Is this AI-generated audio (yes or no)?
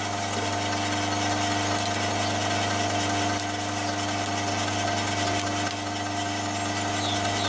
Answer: no